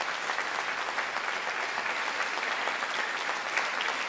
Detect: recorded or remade recorded